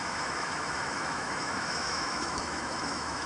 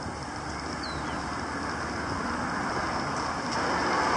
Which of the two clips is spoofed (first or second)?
first